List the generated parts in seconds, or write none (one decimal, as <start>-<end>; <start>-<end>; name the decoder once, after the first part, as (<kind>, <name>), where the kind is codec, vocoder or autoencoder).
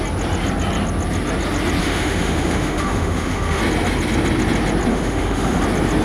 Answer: 1.8-3.6 (autoencoder, DAC-VAE); 4.9-5.6